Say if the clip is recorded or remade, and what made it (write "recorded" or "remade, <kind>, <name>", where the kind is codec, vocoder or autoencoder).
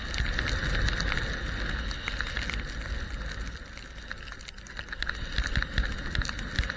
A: recorded